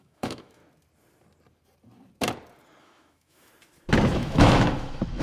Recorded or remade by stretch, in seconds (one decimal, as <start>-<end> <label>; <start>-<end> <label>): 0.0-0.6 remade; 0.6-2.8 recorded; 2.8-3.5 remade; 3.5-4.1 recorded; 4.1-5.2 remade

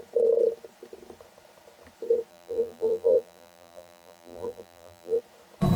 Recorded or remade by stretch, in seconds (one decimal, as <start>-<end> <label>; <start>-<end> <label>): 0.0-2.3 recorded; 2.3-5.2 remade; 5.2-5.8 recorded

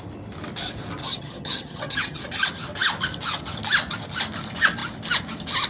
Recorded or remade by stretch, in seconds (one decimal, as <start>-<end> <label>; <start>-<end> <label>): 0.0-1.0 recorded; 1.0-2.2 remade; 2.2-5.7 recorded